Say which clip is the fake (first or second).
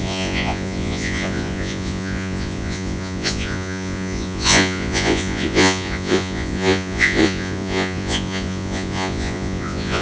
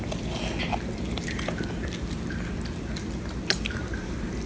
first